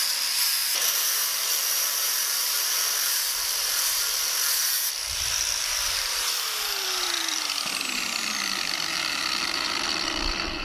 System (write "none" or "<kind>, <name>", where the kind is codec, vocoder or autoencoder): vocoder, BigVGAN v2